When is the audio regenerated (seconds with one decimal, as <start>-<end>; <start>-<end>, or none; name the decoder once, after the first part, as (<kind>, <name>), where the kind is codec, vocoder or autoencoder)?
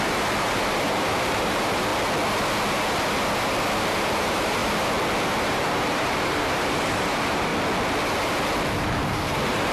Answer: 0.0-1.9 (vocoder, BigVGAN v2); 3.8-4.6; 5.5-7.5; 8.8-9.7